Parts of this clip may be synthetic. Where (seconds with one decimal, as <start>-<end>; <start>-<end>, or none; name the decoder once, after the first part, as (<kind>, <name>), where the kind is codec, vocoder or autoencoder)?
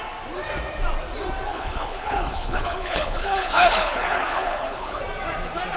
1.5-5.0 (codec, HILCodec)